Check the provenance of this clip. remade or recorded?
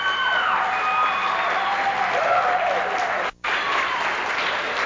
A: recorded